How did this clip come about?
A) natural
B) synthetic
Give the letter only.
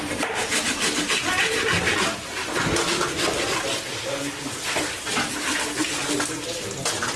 A